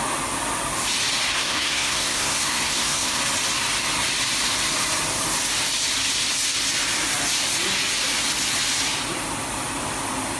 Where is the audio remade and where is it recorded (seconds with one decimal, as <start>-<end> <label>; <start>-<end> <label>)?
0.0-1.3 recorded; 1.3-3.2 remade; 3.2-10.4 recorded